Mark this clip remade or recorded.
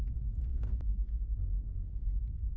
remade